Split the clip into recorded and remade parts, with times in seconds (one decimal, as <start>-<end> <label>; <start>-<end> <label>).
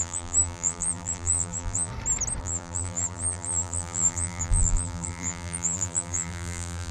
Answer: 0.0-1.9 remade; 1.9-2.4 recorded; 2.4-6.9 remade